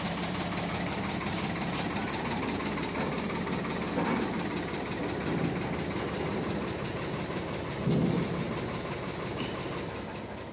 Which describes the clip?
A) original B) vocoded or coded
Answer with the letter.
A